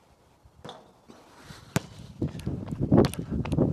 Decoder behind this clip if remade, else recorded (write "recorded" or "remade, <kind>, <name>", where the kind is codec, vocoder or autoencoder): recorded